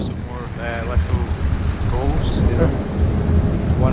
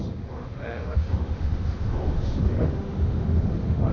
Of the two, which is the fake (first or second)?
second